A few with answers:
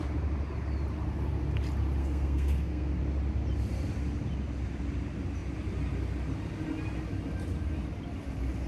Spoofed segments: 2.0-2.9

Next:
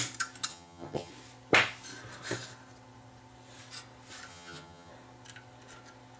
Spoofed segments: 0.5-1.1; 4.3-4.9

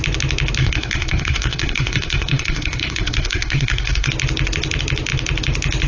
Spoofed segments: 0.6-4.1